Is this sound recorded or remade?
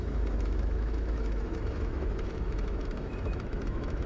remade